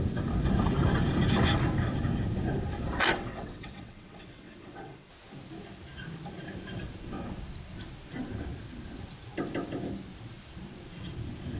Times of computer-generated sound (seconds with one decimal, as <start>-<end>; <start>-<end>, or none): 3.1-5.1